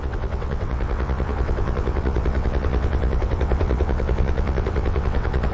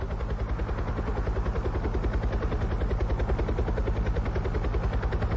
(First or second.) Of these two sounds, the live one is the second